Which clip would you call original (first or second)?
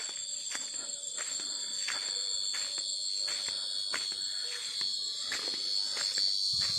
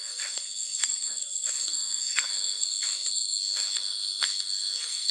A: first